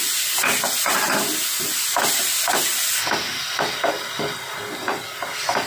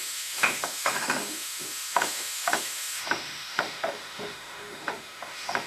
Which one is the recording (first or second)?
first